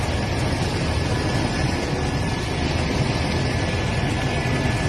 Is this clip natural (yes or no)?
yes